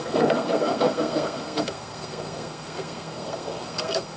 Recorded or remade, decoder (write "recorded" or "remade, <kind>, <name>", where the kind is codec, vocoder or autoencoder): remade, codec, SNAC